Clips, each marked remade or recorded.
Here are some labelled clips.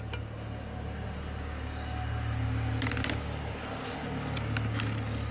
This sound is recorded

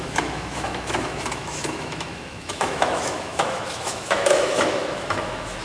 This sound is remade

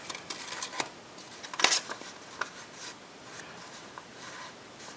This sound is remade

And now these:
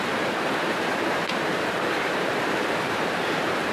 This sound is remade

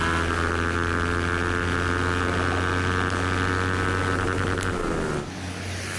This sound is recorded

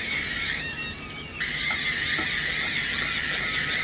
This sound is recorded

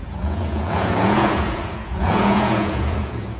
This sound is remade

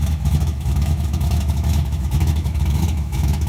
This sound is remade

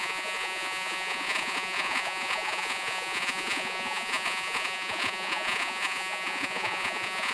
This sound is remade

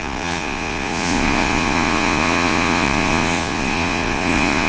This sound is remade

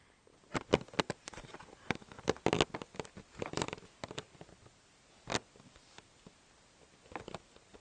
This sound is recorded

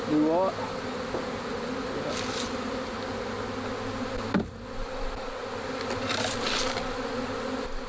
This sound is recorded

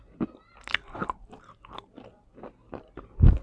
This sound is recorded